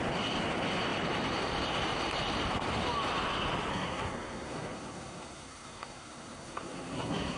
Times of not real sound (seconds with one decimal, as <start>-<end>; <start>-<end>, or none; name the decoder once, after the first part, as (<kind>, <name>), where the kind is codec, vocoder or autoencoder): 3.7-7.4 (codec, SNAC)